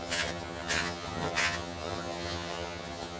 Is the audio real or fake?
fake